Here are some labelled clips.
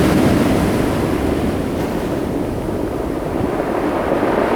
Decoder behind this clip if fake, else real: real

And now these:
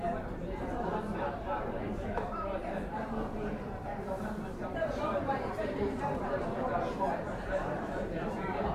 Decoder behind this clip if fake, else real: fake, vocoder, BigVGAN v2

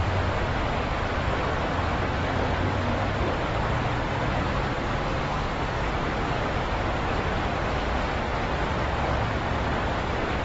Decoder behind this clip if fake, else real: real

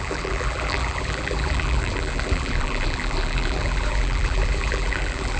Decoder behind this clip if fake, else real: fake, vocoder, BigVGAN v2